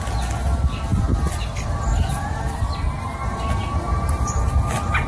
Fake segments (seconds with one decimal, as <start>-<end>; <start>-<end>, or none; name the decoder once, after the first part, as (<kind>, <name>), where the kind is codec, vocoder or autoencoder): none